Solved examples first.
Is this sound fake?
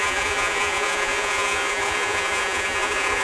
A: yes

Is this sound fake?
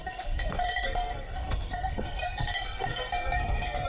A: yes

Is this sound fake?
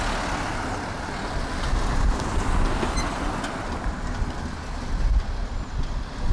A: no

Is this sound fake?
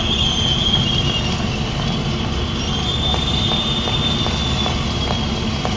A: no